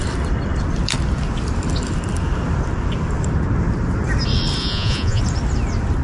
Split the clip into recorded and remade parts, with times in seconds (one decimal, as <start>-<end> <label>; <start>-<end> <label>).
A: 0.0-4.6 recorded; 4.6-5.2 remade; 5.2-6.0 recorded